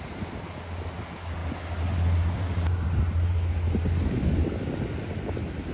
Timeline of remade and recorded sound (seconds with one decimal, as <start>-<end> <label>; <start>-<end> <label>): 0.0-5.7 recorded